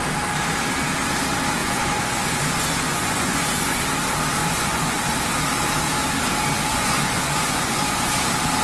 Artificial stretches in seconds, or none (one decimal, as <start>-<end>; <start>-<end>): 1.6-3.8; 4.4-5.0; 6.7-8.1